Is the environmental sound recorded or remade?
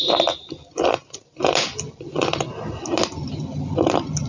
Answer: recorded